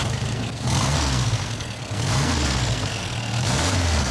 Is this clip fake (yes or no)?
yes